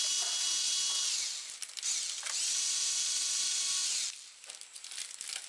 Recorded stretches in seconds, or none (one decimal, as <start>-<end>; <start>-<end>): 0.0-5.5

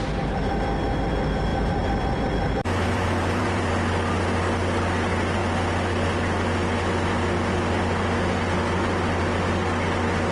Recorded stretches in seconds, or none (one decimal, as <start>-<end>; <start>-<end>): 0.0-1.5; 3.7-10.3

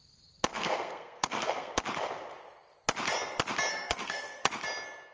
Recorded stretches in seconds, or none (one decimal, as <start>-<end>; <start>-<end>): 0.0-0.5; 1.7-3.7; 4.5-5.1

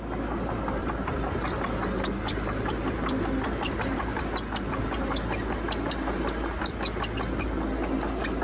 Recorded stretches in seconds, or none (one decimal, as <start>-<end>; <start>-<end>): 0.0-0.8; 4.2-8.4